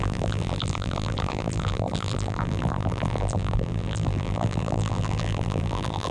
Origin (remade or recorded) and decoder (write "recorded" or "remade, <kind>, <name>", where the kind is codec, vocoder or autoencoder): remade, vocoder, BigVGAN v2